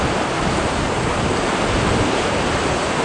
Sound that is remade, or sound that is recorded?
recorded